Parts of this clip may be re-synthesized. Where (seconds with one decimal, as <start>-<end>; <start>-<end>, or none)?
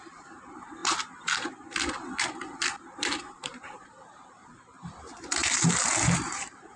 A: 0.0-6.8